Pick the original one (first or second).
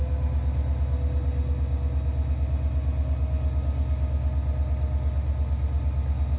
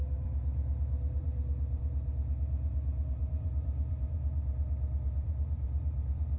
first